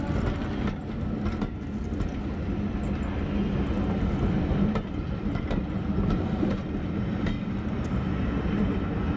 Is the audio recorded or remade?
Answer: recorded